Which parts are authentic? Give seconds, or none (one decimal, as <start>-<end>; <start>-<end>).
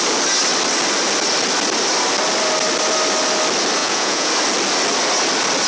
0.0-3.8; 4.3-5.7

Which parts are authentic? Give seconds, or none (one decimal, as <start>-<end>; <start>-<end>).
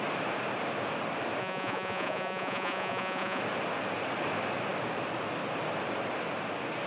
0.0-1.4; 3.4-6.9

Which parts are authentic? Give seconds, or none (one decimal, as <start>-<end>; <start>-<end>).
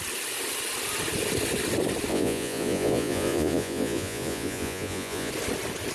0.0-2.1; 5.3-5.9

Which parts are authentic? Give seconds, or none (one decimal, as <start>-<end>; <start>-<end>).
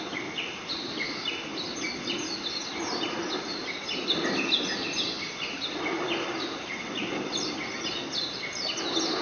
0.0-9.2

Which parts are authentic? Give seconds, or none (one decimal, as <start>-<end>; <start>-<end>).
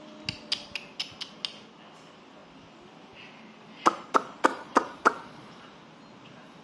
0.0-4.5; 5.5-6.6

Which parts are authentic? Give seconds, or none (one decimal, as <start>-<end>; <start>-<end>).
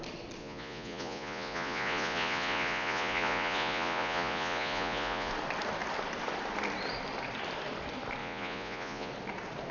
0.0-0.4; 5.3-8.2; 9.1-9.7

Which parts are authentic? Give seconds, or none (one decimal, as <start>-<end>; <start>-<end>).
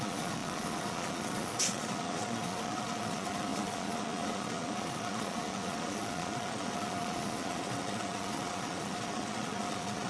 none